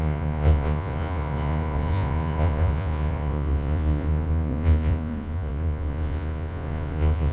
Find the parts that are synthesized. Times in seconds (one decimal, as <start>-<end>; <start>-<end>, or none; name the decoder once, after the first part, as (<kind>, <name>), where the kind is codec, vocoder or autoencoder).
0.0-7.3 (vocoder, Vocos)